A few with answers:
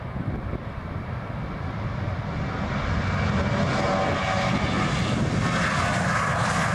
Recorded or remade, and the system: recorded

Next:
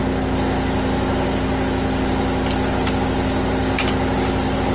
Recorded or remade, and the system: recorded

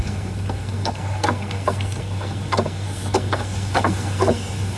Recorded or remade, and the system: remade, codec, SNAC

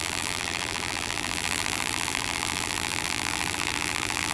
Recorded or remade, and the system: remade, vocoder, BigVGAN v2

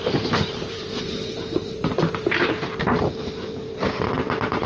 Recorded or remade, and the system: remade, vocoder, BigVGAN v2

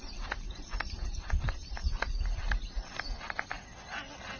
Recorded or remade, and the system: recorded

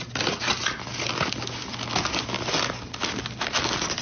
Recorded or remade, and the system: recorded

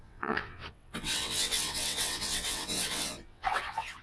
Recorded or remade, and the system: remade, vocoder, WaveNeXt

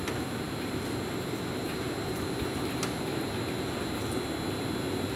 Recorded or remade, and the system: remade, vocoder, BigVGAN v2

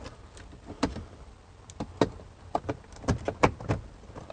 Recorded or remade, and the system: recorded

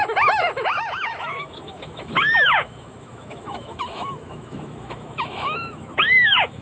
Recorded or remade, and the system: remade, autoencoder, DAC-VAE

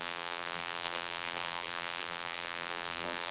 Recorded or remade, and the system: remade, vocoder, BigVGAN v2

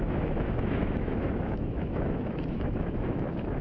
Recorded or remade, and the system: remade, autoencoder, DAC-VAE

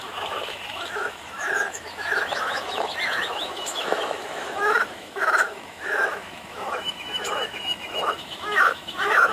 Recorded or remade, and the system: remade, autoencoder, DAC-VAE